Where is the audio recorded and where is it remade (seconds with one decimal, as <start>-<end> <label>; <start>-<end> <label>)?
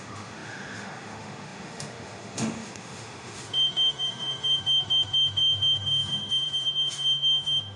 0.0-7.8 remade